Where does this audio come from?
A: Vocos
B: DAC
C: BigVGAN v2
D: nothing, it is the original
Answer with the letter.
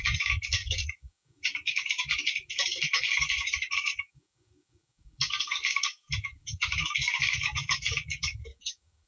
B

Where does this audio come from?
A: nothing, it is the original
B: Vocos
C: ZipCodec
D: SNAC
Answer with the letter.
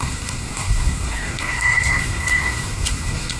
D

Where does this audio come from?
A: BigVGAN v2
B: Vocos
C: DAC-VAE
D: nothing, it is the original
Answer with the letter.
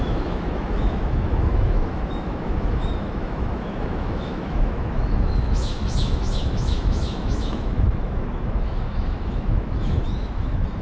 C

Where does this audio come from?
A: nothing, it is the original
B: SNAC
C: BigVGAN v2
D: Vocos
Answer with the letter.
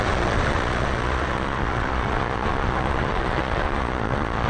D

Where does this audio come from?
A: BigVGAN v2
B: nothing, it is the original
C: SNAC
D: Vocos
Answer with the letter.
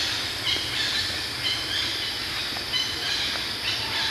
B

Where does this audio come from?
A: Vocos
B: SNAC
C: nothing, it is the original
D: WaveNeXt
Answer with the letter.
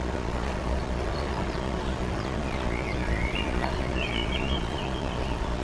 A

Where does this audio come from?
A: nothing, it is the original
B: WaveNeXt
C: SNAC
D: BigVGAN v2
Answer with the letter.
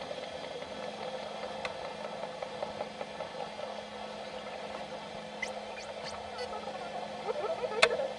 A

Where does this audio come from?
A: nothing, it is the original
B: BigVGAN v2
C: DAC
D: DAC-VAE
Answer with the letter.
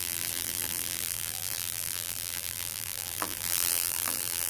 B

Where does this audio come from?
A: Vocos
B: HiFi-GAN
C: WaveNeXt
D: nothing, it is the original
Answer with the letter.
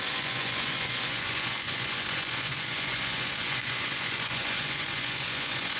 A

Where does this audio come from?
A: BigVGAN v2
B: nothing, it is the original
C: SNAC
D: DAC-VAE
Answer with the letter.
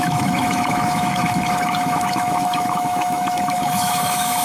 D